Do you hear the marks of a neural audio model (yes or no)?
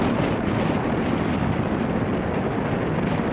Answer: no